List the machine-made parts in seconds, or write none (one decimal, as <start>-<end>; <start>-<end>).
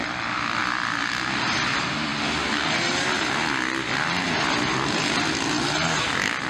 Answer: none